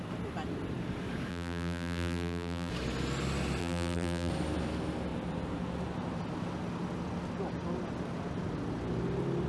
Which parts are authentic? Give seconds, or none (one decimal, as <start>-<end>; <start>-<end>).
0.0-1.3; 2.7-3.6; 4.3-9.5

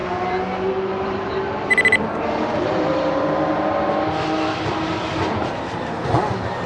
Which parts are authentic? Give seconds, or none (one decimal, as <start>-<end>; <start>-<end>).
3.9-5.4; 6.1-6.7